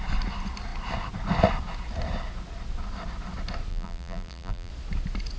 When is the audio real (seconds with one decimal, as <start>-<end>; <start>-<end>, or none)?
0.0-3.7; 4.7-5.4